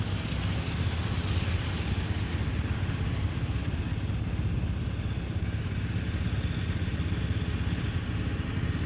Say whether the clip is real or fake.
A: real